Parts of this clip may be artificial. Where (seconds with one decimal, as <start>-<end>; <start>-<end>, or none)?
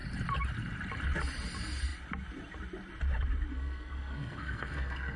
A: 3.5-5.2